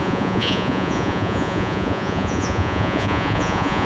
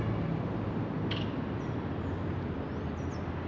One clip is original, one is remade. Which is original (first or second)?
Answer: second